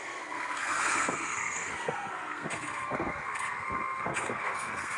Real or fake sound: fake